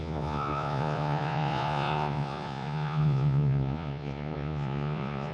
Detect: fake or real fake